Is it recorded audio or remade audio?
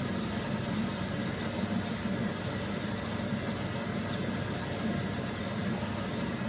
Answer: recorded